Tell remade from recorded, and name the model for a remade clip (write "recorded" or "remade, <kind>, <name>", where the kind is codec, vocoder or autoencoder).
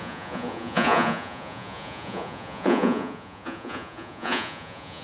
remade, vocoder, Vocos